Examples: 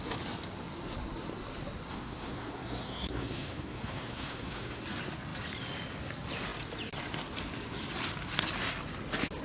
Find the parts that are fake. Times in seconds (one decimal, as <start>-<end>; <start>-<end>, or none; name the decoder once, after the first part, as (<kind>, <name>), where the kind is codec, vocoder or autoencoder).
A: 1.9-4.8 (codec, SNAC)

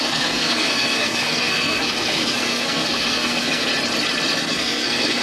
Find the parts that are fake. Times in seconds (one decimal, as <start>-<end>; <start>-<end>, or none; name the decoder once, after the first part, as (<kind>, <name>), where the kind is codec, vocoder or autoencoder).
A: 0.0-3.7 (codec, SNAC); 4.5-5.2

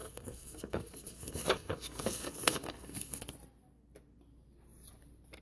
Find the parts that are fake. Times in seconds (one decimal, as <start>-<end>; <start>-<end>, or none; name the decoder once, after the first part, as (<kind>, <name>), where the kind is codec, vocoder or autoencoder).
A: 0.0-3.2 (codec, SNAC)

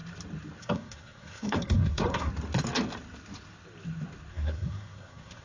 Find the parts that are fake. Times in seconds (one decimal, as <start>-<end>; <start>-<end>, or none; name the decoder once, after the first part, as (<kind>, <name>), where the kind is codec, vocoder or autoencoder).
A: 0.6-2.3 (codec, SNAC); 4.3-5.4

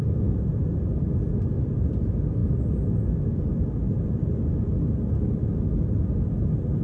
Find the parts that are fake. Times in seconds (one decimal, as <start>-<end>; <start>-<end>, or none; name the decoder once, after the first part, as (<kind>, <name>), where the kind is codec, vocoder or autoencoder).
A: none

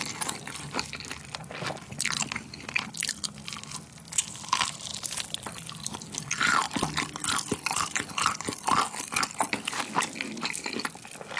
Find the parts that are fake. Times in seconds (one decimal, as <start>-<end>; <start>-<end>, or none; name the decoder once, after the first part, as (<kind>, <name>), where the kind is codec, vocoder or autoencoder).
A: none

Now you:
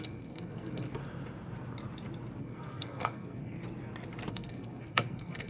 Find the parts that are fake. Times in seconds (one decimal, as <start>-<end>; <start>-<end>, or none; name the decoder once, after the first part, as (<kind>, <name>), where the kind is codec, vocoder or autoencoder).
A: 0.0-1.0 (codec, SNAC); 2.4-3.6; 4.3-5.5

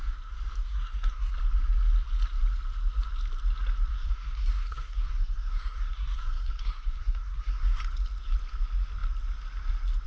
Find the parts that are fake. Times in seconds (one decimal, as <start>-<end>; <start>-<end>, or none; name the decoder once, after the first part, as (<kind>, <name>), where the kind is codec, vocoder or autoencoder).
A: 0.6-1.3 (codec, SNAC); 3.9-7.8